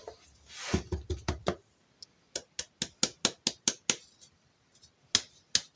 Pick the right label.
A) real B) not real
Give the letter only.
A